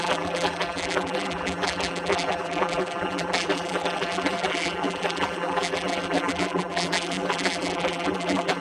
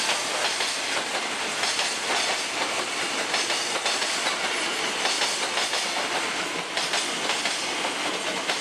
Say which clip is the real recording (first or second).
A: second